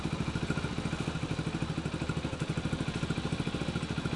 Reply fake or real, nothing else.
real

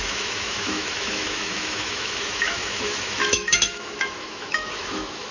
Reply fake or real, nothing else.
fake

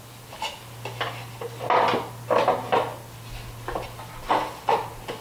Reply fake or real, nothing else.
real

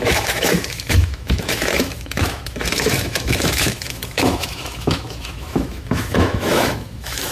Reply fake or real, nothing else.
fake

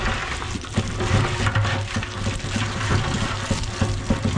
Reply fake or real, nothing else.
real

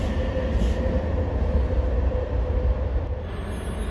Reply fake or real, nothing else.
real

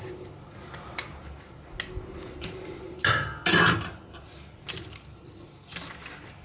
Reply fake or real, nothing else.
real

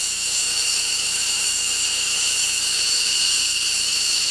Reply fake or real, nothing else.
fake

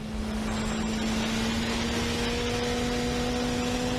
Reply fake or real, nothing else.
real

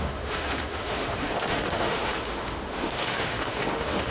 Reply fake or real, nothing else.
fake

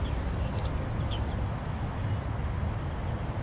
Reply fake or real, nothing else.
real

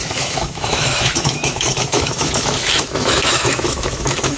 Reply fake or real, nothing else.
fake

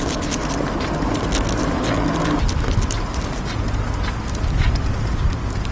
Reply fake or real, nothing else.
real